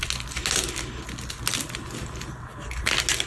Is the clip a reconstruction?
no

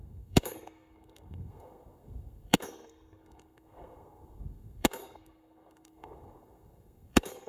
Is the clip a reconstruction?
yes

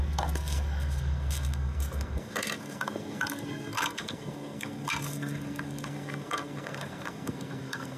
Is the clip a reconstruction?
yes